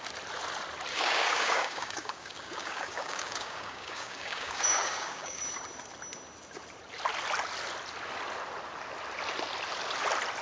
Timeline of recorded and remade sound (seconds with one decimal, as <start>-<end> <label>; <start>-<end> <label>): 0.0-0.9 recorded; 0.9-5.4 remade; 5.4-10.4 recorded